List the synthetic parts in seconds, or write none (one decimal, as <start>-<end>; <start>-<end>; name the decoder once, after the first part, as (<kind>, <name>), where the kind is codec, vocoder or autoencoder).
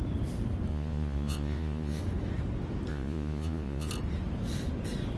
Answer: 0.7-2.0 (vocoder, Vocos); 2.9-3.9